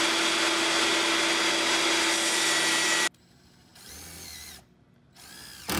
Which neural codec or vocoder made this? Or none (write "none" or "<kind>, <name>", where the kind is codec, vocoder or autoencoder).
none